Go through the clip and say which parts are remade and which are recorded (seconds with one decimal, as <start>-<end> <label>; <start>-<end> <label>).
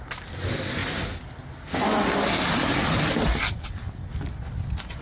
0.0-5.0 recorded